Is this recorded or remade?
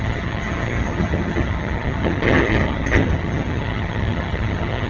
remade